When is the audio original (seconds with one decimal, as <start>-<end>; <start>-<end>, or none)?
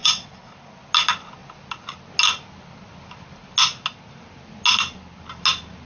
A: 0.5-5.9